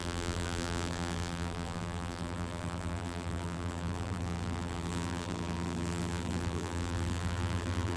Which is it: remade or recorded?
remade